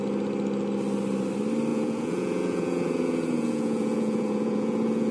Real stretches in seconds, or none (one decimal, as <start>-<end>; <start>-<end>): 0.0-1.7